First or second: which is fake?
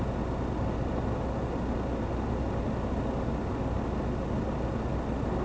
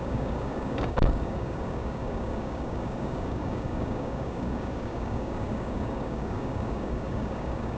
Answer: second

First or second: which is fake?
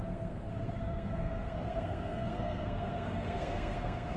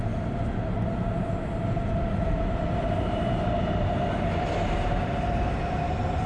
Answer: first